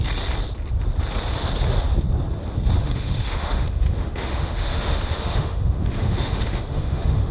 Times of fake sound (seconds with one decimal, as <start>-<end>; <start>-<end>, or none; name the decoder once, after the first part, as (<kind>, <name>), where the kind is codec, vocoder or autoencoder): 2.8-7.3 (autoencoder, DAC-VAE)